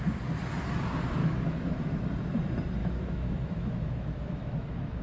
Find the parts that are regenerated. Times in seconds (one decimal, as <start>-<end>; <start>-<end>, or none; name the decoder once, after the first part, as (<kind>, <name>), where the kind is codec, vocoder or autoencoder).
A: 1.2-2.0 (autoencoder, DAC-VAE); 2.8-5.0